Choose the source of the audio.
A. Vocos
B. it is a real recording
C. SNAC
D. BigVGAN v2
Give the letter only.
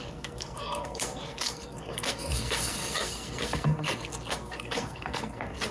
C